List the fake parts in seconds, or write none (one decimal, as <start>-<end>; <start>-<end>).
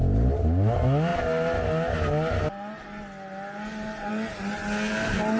none